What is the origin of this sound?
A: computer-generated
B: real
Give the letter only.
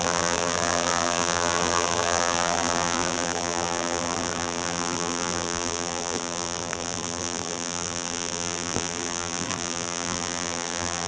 A